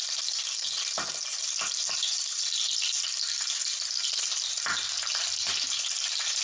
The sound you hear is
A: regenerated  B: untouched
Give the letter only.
B